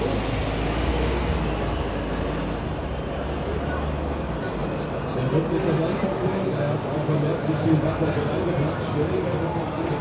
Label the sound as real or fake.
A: real